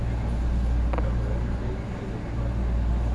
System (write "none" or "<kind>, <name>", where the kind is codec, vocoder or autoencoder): none